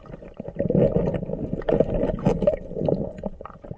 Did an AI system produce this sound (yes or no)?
no